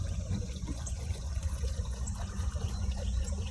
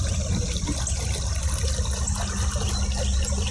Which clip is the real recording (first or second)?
second